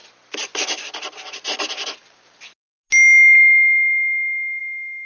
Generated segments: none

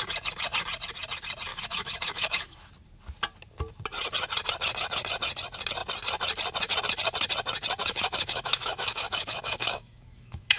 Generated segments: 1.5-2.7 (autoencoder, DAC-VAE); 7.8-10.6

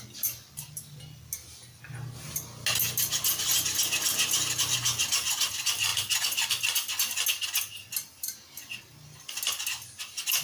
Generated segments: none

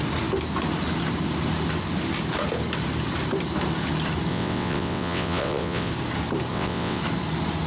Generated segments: 4.3-5.9 (vocoder, WaveNeXt); 6.5-7.0

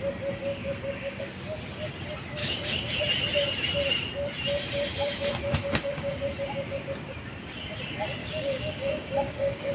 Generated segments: 0.5-1.2 (codec, DAC); 2.4-3.0; 5.6-6.2; 8.2-9.7

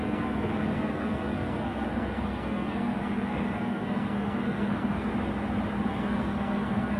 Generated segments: 0.0-5.1 (codec, SNAC); 5.9-7.0